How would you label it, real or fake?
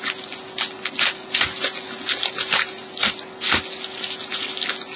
real